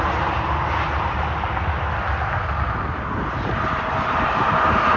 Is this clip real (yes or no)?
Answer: yes